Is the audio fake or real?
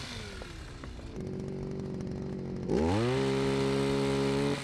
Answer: real